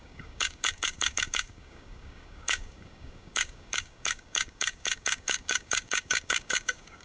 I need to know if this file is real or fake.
fake